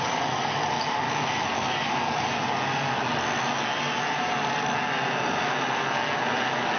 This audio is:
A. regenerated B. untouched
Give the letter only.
B